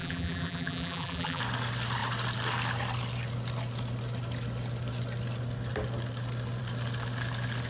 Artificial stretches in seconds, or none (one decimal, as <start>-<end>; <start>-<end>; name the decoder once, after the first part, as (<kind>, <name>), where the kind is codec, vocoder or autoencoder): 0.0-1.4 (vocoder, BigVGAN v2)